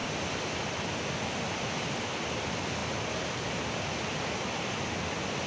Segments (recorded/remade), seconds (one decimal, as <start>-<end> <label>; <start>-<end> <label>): 0.0-5.5 recorded